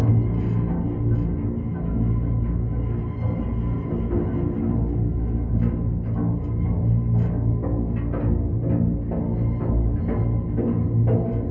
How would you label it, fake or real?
real